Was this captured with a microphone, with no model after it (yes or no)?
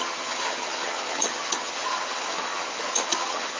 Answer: no